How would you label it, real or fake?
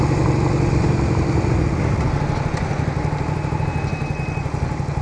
real